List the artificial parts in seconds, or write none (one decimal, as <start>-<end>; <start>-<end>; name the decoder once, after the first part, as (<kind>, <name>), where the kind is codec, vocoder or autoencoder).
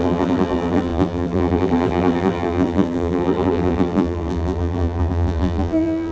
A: 0.0-6.1 (vocoder, BigVGAN v2)